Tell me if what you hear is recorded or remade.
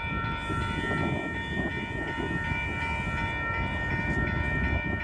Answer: recorded